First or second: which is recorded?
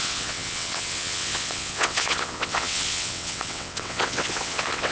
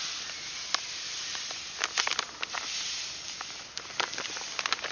second